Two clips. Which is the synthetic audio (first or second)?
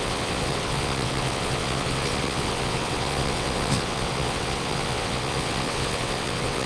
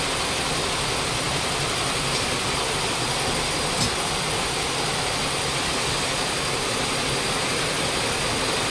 first